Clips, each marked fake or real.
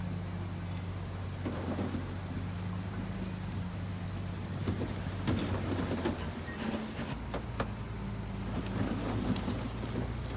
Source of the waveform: real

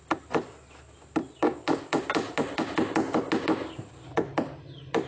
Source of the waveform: real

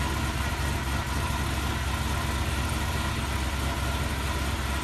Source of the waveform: real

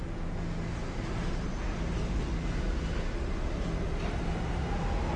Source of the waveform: real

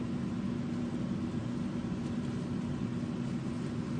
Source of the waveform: real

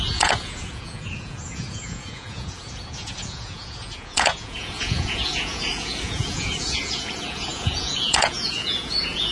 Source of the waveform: fake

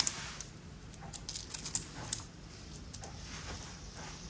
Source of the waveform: real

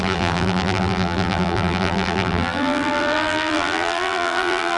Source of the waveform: fake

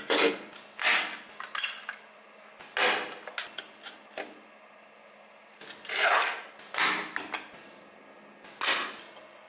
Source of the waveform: real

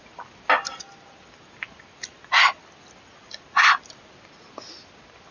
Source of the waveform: real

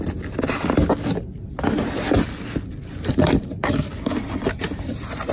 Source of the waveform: real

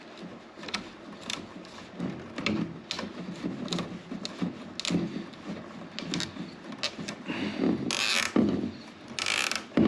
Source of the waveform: real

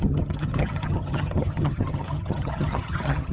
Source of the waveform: fake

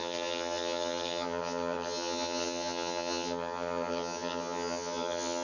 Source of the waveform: fake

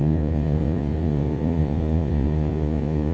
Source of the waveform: fake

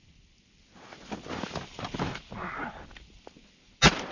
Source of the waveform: real